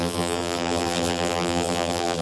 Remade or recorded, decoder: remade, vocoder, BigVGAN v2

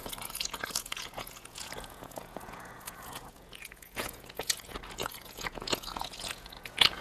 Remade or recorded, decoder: remade, vocoder, Vocos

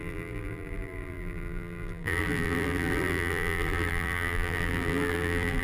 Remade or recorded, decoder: remade, vocoder, BigVGAN v2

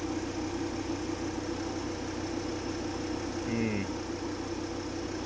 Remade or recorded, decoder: recorded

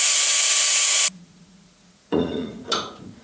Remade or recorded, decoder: remade, vocoder, Vocos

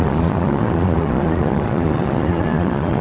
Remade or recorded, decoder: remade, vocoder, Vocos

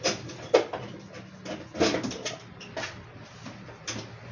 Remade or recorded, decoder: recorded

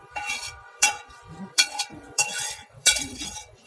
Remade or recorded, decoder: remade, vocoder, WaveNeXt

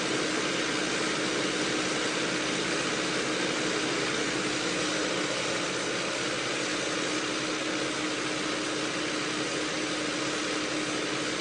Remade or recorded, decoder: recorded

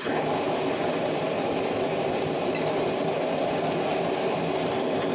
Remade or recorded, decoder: recorded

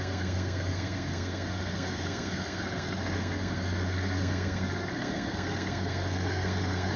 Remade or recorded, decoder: remade, codec, SNAC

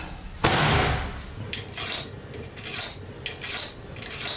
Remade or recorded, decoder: recorded